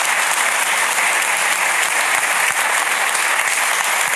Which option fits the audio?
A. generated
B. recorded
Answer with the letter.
B